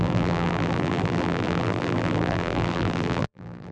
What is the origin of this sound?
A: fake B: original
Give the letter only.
A